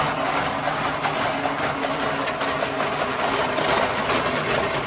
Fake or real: real